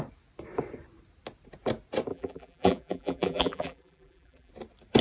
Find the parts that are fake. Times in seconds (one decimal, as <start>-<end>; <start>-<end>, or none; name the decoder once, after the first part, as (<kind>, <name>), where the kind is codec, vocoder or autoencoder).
2.1-4.5 (vocoder, BigVGAN v2)